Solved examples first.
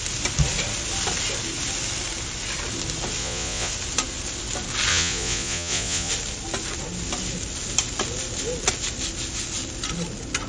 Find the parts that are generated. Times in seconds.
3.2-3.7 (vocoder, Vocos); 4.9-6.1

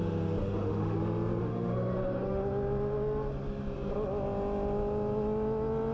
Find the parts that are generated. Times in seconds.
0.4-1.0 (autoencoder, DAC-VAE); 1.4-2.4

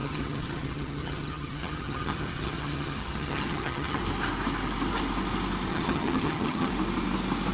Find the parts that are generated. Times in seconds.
0.0-4.0 (vocoder, HiFi-GAN); 5.7-6.7